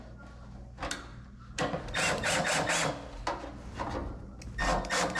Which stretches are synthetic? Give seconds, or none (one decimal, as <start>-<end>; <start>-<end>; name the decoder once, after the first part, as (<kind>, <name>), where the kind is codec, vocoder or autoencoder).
1.1-2.9 (vocoder, BigVGAN v2)